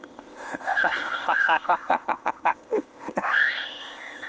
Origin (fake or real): fake